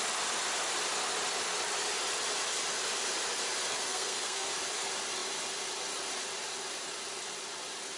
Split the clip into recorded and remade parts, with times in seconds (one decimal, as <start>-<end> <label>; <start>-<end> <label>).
0.0-3.7 recorded; 3.7-4.5 remade; 4.5-8.0 recorded

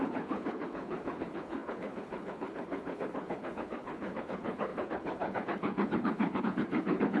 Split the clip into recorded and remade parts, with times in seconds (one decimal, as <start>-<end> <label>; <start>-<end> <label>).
0.0-7.2 remade

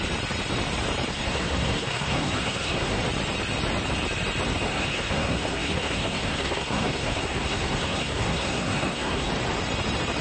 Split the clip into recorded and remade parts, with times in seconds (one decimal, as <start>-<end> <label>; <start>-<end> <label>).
0.0-1.1 recorded; 1.1-3.0 remade; 3.0-4.7 recorded; 4.7-9.3 remade; 9.3-10.2 recorded

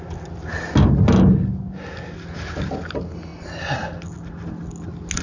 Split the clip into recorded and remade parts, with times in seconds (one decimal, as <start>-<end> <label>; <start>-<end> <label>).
0.0-5.2 recorded

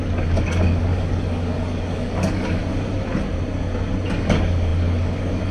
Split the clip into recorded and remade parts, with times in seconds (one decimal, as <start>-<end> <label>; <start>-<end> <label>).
0.0-2.6 remade; 2.6-4.1 recorded; 4.1-5.5 remade

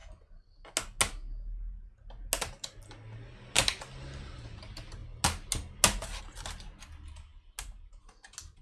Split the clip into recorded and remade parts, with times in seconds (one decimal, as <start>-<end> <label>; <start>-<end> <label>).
0.0-8.6 recorded

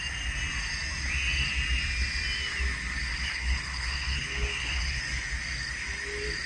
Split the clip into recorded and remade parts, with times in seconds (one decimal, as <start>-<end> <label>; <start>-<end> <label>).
0.0-3.1 recorded; 3.1-5.0 remade; 5.0-6.5 recorded

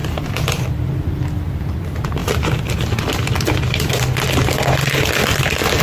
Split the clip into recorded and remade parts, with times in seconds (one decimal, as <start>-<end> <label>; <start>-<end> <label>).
0.0-0.6 remade; 0.6-2.2 recorded; 2.2-5.8 remade